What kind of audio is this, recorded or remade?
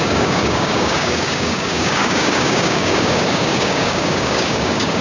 remade